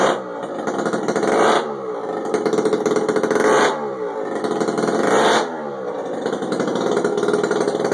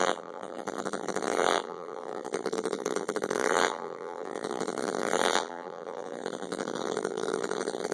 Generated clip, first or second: second